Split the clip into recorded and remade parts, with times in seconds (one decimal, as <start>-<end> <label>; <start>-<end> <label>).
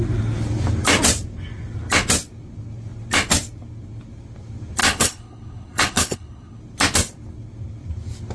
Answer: 0.0-4.8 recorded; 4.8-6.6 remade; 6.6-8.3 recorded